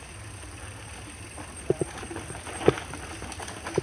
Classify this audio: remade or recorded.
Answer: remade